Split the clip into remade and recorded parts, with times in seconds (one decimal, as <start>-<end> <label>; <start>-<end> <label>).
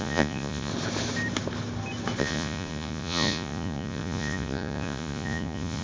0.0-0.7 remade; 0.7-2.2 recorded; 2.2-5.8 remade